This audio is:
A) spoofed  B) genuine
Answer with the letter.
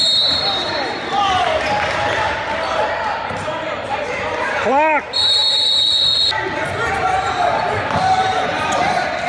B